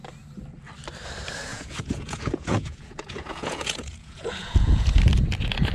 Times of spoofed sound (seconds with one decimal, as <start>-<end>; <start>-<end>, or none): 1.5-4.9